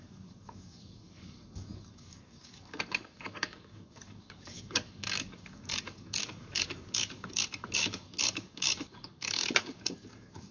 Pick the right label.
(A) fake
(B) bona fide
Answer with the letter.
A